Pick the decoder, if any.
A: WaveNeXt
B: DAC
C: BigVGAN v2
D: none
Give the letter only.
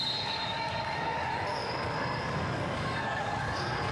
B